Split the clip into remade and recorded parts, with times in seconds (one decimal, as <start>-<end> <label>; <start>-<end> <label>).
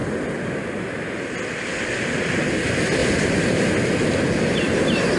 0.0-3.0 recorded; 3.0-3.7 remade; 3.7-5.2 recorded